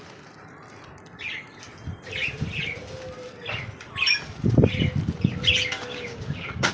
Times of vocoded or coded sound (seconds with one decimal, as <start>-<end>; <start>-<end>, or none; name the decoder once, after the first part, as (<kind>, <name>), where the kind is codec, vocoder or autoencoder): 5.9-6.7 (codec, DAC)